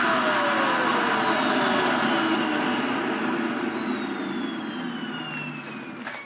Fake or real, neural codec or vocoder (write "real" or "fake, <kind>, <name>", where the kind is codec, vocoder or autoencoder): real